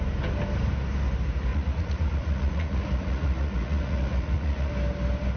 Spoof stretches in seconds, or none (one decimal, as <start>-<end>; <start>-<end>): 1.5-4.7

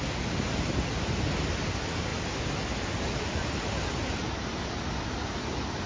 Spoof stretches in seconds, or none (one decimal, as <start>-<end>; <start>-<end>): none

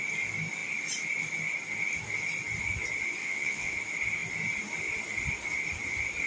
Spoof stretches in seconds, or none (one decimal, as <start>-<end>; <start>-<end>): 3.2-3.7

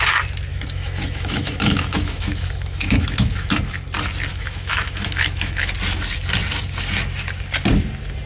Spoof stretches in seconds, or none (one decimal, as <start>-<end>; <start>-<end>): 0.5-3.5; 4.3-5.7

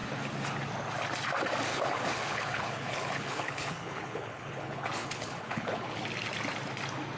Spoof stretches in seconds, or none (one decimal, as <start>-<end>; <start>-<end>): 1.7-6.0

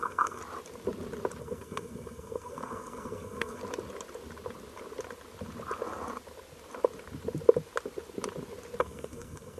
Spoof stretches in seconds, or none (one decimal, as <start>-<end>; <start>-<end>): 0.0-0.4; 1.4-3.6; 8.8-9.6